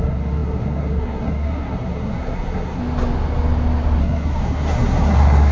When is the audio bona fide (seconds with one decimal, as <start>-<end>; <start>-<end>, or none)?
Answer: 2.8-4.0